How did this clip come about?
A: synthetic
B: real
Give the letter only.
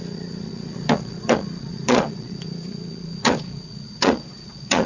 A